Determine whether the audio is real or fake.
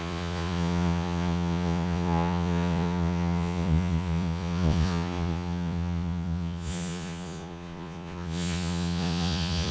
fake